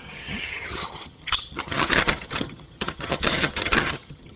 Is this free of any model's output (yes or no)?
no